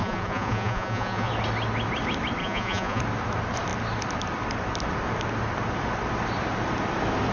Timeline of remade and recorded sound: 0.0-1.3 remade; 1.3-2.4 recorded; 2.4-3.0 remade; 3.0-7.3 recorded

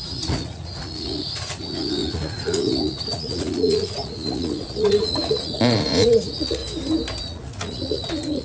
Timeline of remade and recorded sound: 0.0-6.6 remade; 6.6-7.2 recorded; 7.2-8.4 remade